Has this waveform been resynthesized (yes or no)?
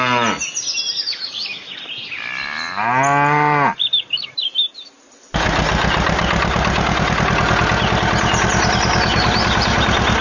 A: no